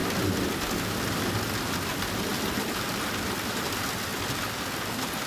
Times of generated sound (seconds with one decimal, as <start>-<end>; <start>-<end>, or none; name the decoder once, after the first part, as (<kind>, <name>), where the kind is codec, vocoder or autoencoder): none